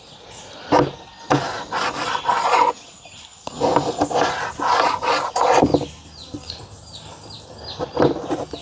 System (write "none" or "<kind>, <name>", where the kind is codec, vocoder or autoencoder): none